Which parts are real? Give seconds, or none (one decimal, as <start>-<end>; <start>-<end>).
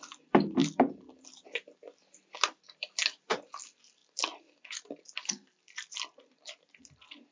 0.0-7.3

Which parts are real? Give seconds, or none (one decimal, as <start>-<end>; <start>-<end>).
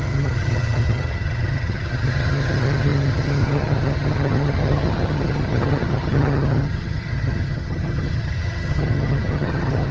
none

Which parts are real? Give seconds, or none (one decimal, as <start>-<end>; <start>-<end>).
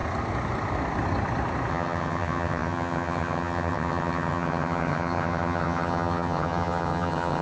0.0-1.7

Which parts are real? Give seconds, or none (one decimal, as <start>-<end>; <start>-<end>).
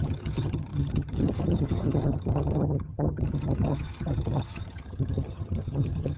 none